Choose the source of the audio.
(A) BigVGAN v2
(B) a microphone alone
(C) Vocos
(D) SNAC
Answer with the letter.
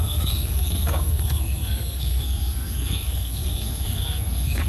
D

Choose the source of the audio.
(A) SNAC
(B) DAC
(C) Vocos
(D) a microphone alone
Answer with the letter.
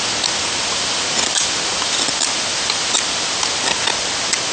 D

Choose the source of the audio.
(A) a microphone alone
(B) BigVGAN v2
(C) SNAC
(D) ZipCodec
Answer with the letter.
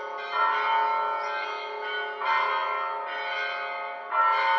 A